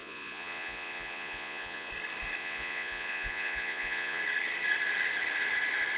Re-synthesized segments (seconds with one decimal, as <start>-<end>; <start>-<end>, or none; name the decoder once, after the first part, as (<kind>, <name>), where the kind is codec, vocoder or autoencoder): 0.0-1.9 (vocoder, Vocos); 2.4-4.2